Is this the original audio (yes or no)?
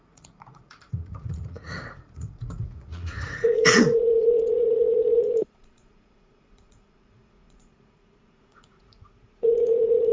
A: no